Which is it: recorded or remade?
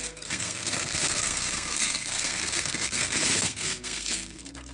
remade